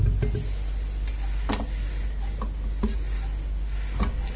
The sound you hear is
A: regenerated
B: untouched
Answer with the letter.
B